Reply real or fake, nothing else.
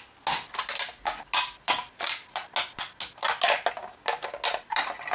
real